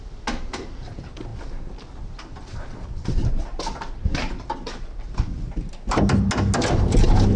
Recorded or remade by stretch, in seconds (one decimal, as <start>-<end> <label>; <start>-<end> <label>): 0.0-7.4 recorded